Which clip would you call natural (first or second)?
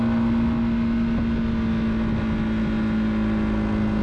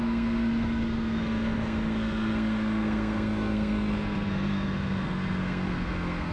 first